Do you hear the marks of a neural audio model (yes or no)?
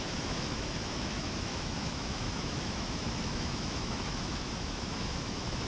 yes